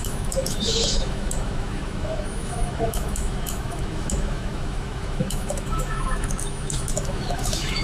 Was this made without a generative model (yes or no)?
no